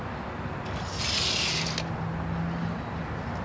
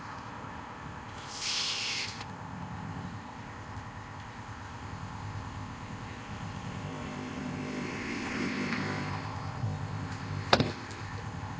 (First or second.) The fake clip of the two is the second